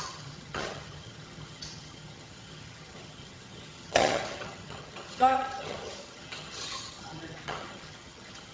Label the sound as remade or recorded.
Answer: remade